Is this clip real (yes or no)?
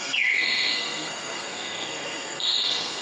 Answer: no